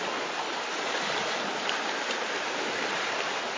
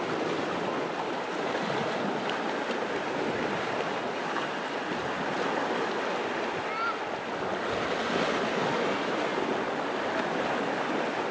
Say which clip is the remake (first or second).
first